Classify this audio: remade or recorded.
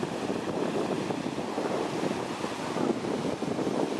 recorded